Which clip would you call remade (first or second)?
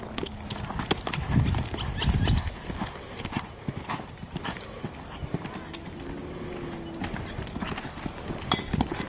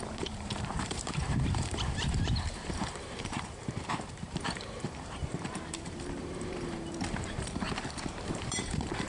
second